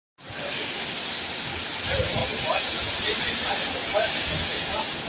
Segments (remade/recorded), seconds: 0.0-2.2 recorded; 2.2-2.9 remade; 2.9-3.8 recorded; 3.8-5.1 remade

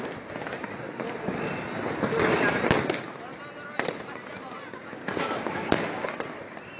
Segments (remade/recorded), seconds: 0.0-4.8 recorded; 4.8-5.8 remade; 5.8-6.8 recorded